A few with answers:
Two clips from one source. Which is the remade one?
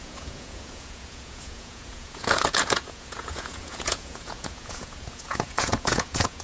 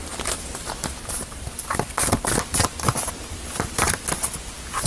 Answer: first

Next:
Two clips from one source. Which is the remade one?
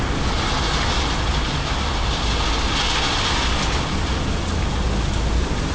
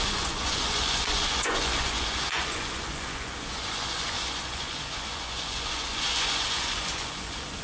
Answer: second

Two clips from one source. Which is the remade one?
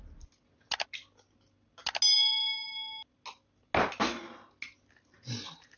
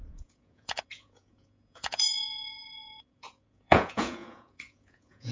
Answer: second